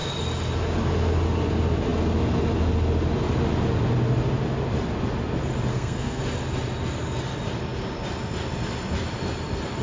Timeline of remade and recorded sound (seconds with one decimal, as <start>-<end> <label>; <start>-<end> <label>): 0.0-5.7 recorded; 5.7-6.2 remade; 6.2-9.8 recorded